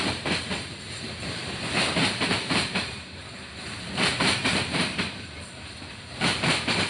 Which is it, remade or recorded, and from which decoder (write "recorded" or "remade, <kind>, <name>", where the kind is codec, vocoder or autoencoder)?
remade, vocoder, BigVGAN v2